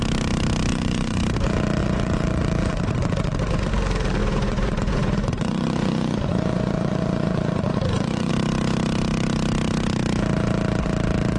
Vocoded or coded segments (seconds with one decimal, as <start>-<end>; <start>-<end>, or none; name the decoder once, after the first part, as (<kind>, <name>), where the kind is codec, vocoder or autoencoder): 0.7-1.2 (vocoder, Vocos); 1.8-3.7; 4.2-8.3